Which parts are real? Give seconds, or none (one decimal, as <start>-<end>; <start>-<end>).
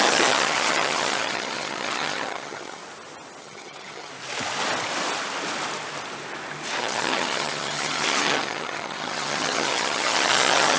2.8-3.4; 4.1-6.8